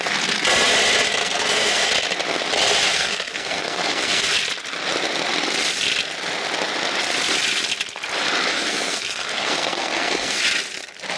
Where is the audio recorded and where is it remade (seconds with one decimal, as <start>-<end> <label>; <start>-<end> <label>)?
0.0-1.1 recorded; 1.1-1.9 remade; 1.9-2.9 recorded; 2.9-4.3 remade; 4.3-8.5 recorded; 8.5-10.4 remade; 10.4-11.2 recorded